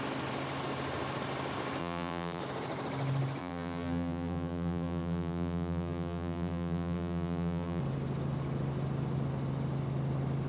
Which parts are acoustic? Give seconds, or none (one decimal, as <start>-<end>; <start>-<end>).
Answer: 0.0-1.8; 2.4-3.4; 7.8-10.5